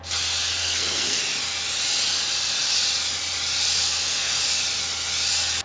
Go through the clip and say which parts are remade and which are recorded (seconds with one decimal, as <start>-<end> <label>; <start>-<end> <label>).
0.0-0.6 recorded; 0.6-1.2 remade; 1.2-3.8 recorded; 3.8-4.4 remade; 4.4-5.6 recorded